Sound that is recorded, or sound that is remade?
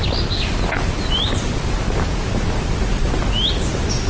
recorded